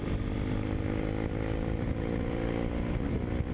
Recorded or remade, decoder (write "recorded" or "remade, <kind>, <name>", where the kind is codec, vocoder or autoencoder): recorded